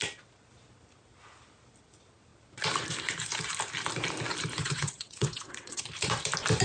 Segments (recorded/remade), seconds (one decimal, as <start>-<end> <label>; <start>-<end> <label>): 0.0-4.6 recorded; 4.6-5.8 remade; 5.8-6.6 recorded